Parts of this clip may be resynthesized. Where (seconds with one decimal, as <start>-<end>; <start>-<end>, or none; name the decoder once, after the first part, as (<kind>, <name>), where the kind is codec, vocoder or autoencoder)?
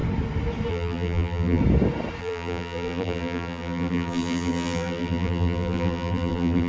0.7-1.6 (vocoder, BigVGAN v2); 2.2-6.7